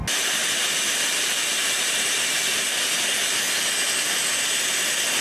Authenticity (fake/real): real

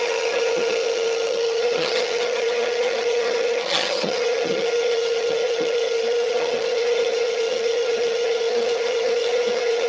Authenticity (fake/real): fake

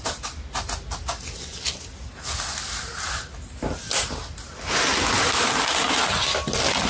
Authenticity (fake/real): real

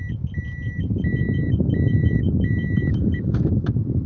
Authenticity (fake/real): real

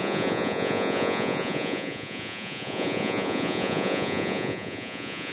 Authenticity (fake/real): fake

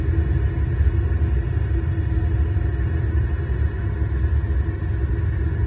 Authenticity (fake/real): real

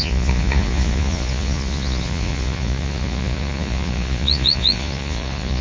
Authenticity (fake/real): fake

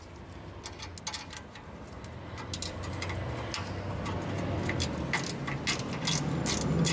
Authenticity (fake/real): real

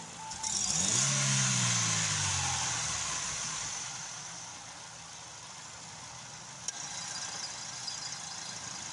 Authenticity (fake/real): real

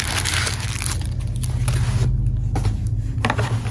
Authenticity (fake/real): real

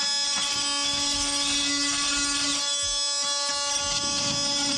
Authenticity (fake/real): real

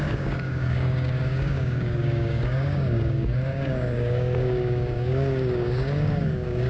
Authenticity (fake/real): fake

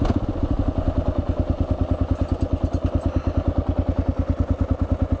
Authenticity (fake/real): real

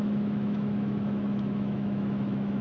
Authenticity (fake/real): fake